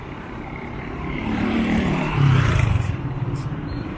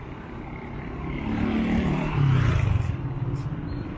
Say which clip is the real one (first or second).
second